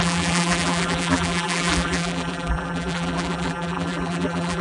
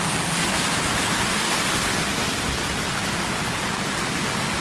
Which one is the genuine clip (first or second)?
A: second